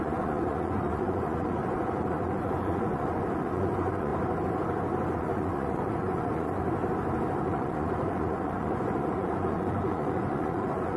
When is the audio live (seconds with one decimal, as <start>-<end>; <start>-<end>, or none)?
4.1-5.1; 6.6-7.5

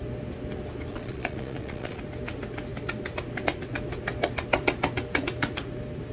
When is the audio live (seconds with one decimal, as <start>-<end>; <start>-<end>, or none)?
0.0-0.9; 2.0-6.1

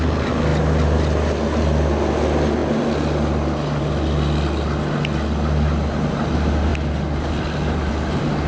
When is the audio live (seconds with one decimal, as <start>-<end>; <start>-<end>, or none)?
0.0-8.5

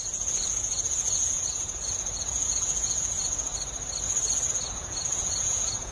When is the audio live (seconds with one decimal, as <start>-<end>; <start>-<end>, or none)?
3.5-4.5

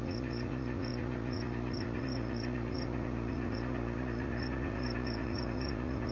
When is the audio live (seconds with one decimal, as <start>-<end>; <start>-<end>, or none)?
none

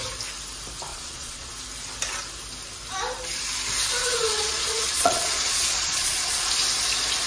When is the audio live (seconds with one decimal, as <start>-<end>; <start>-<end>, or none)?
0.0-0.9; 1.5-4.0; 6.5-7.3